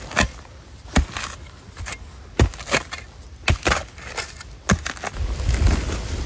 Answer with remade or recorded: recorded